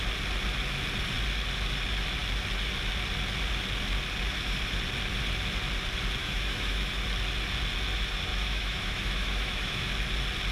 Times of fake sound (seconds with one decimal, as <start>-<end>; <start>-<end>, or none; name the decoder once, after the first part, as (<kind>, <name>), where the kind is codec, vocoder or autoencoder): 6.2-6.9 (autoencoder, DAC-VAE); 8.3-9.9